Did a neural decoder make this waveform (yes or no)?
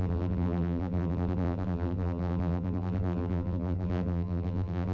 yes